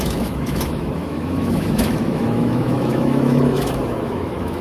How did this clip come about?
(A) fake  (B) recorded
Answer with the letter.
A